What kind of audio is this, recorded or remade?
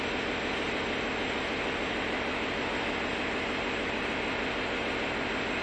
recorded